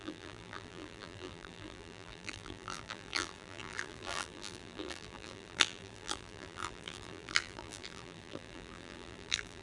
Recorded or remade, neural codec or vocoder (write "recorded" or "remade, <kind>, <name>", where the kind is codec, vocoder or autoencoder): remade, vocoder, BigVGAN v2